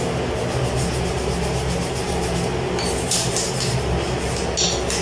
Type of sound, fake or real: real